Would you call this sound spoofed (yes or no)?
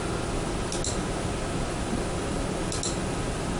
no